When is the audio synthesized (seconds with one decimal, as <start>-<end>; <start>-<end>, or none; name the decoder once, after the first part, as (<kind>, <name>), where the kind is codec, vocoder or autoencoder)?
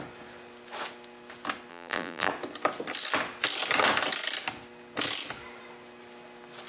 1.7-2.3 (vocoder, BigVGAN v2)